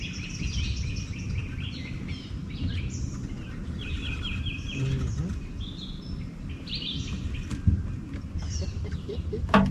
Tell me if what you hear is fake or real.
real